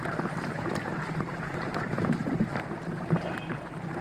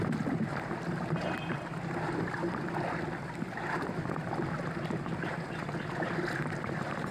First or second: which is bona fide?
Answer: second